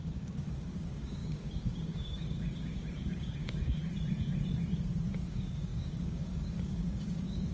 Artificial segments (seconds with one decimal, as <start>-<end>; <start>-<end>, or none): 0.0-3.8; 5.2-7.5